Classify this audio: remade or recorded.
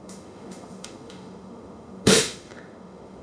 remade